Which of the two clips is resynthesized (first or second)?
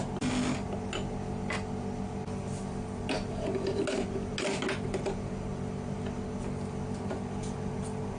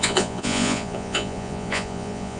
second